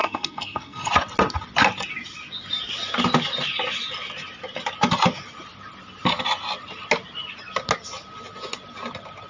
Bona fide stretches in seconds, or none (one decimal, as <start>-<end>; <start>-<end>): 0.9-9.3